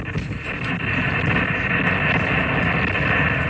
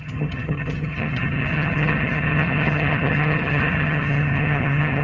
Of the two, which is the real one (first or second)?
first